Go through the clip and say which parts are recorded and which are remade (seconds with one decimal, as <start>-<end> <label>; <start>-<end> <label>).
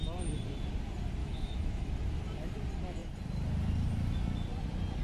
0.0-1.2 recorded; 1.2-1.9 remade; 1.9-5.0 recorded